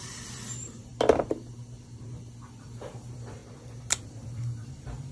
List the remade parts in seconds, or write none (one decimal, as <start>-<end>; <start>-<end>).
0.0-0.9; 2.6-3.4; 4.0-5.1